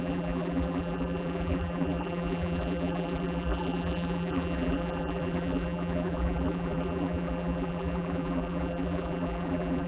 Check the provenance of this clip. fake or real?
fake